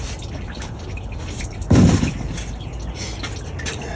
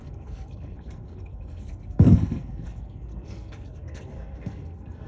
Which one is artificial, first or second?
second